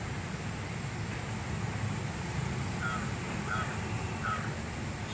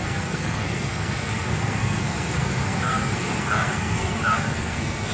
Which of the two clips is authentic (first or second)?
first